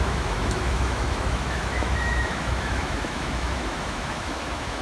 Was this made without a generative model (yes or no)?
no